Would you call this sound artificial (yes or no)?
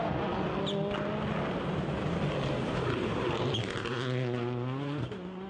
no